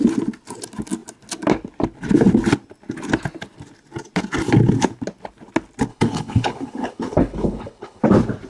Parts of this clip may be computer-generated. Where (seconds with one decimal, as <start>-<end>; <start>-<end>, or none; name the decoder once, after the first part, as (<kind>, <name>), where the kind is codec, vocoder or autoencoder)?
5.9-8.0 (codec, HILCodec)